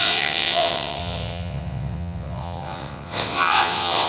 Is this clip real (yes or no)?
no